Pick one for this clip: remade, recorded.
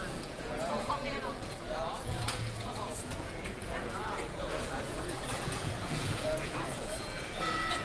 remade